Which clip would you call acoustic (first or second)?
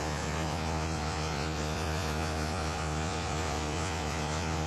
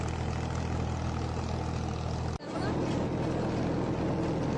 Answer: second